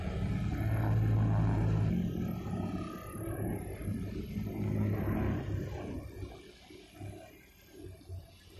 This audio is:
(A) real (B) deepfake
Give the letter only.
A